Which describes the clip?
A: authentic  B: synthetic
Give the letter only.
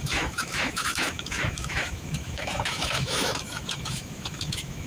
B